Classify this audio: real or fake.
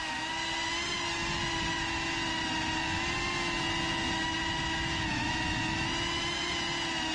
real